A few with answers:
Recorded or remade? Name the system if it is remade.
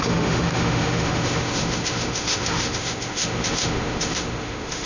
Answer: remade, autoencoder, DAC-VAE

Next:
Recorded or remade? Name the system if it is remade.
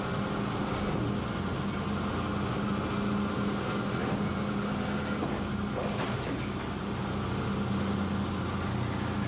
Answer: recorded